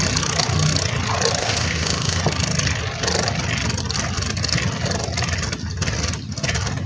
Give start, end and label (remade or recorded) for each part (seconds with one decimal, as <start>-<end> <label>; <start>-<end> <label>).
0.0-1.4 recorded; 1.4-2.2 remade; 2.2-6.9 recorded